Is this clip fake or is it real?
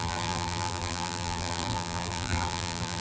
fake